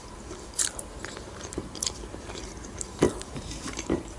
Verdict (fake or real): fake